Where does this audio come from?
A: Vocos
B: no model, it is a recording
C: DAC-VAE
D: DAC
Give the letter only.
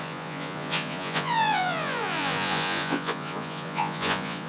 A